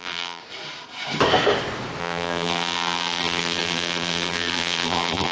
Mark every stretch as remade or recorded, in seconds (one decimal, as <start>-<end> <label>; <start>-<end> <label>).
0.0-0.4 remade; 0.4-2.0 recorded; 2.0-5.3 remade

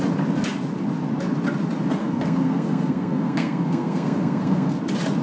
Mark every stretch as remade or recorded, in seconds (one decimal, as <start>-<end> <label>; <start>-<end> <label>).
0.0-2.0 recorded; 2.0-4.8 remade; 4.8-5.2 recorded

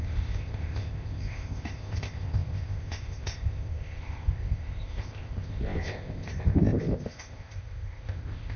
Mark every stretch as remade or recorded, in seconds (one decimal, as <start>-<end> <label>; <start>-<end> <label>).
0.0-8.6 remade

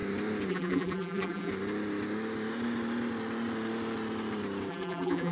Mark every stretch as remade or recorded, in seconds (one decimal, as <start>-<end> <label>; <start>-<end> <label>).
0.0-0.5 recorded; 0.5-1.5 remade; 1.5-4.7 recorded; 4.7-5.3 remade

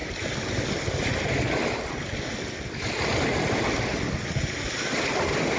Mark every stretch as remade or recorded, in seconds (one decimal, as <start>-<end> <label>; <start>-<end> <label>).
0.0-5.6 recorded

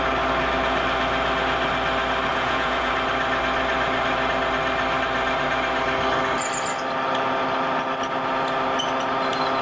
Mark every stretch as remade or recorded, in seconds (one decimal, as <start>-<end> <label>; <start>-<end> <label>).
0.0-2.3 recorded; 2.3-2.9 remade; 2.9-9.6 recorded

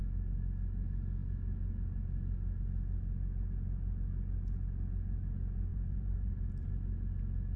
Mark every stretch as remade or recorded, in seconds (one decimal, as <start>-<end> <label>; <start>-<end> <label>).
0.0-5.7 recorded; 5.7-6.7 remade; 6.7-7.6 recorded